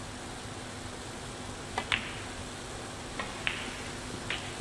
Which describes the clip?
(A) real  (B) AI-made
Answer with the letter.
A